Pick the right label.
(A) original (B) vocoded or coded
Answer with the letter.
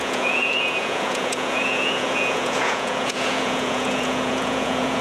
B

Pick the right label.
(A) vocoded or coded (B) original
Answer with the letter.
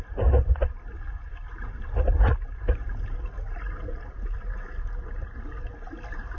B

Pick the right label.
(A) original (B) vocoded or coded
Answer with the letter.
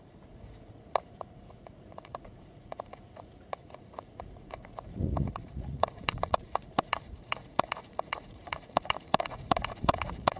B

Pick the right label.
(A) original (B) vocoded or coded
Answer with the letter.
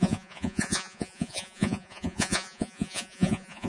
B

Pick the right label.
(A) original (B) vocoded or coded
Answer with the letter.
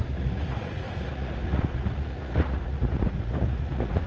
B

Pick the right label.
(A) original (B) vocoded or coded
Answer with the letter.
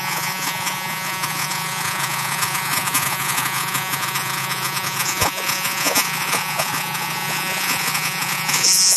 B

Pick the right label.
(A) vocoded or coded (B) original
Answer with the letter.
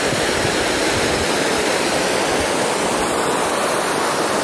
B